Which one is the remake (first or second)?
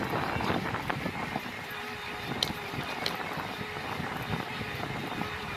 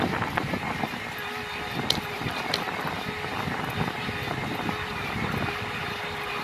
first